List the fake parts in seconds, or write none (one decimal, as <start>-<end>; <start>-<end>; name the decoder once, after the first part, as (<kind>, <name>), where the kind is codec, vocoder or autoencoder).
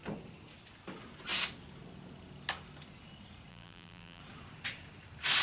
3.5-4.2 (vocoder, BigVGAN v2)